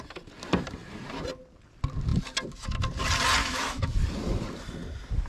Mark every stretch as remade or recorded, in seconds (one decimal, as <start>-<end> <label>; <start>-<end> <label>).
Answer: 0.0-3.4 recorded; 3.4-3.9 remade; 3.9-5.3 recorded